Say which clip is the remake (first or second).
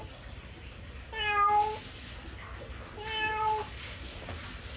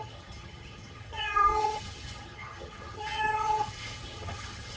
second